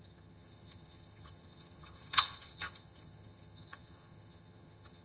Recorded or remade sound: remade